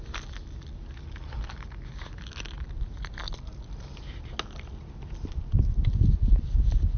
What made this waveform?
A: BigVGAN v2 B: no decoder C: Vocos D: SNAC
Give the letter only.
B